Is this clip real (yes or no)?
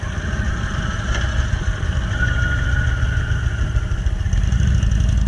yes